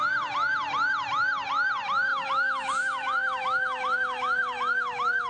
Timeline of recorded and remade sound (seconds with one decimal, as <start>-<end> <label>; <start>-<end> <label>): 0.0-2.1 recorded; 2.1-5.3 remade

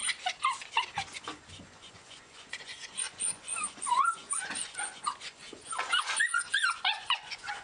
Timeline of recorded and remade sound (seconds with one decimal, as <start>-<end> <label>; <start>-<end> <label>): 0.0-1.0 recorded; 1.0-7.6 remade